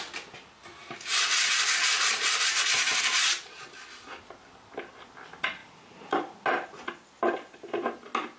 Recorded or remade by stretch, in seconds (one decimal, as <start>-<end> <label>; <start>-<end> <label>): 0.0-0.7 recorded; 0.7-3.0 remade; 3.0-5.6 recorded; 5.6-6.4 remade; 6.4-8.4 recorded